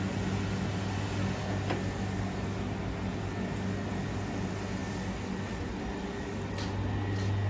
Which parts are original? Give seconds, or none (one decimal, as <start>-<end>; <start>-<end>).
0.0-7.5